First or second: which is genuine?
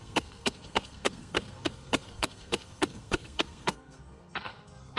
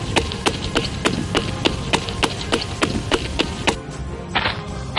second